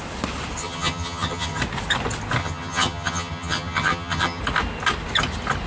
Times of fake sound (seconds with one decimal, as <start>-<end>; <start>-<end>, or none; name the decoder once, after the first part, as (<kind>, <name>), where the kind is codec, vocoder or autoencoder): 0.6-1.6 (vocoder, HiFi-GAN); 2.4-4.4